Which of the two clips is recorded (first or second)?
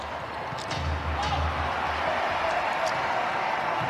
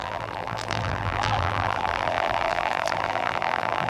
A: first